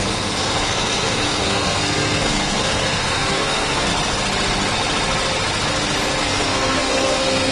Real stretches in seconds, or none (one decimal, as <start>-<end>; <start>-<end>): 3.9-6.2